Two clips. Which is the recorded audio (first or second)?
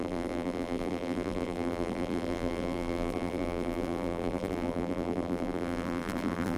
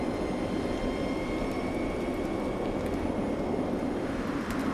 second